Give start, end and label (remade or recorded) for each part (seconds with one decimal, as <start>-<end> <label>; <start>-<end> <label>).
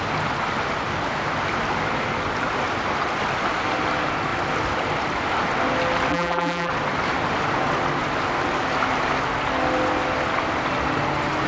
0.0-6.1 recorded; 6.1-6.7 remade; 6.7-11.5 recorded